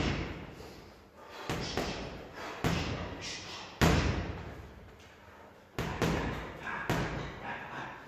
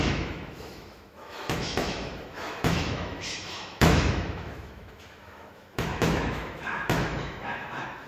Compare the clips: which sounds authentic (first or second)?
first